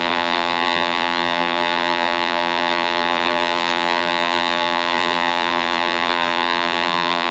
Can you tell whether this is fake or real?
fake